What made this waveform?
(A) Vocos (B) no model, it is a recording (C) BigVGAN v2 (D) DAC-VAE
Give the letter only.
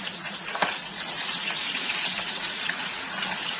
A